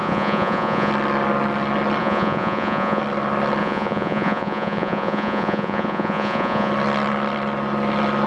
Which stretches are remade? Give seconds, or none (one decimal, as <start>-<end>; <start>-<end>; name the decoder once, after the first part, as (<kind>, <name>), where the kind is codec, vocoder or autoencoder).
0.0-0.9 (vocoder, Vocos); 2.0-3.0; 3.6-6.7